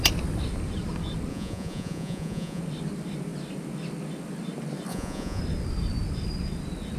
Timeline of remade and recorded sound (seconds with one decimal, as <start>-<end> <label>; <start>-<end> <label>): 0.0-1.3 recorded; 1.3-2.6 remade; 2.6-4.9 recorded; 4.9-5.4 remade; 5.4-7.0 recorded